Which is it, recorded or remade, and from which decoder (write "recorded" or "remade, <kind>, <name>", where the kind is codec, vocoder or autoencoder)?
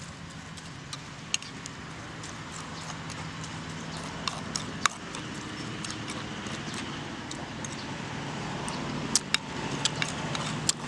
recorded